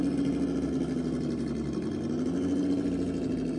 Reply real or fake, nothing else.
real